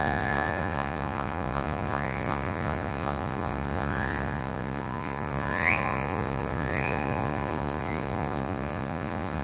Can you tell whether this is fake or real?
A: fake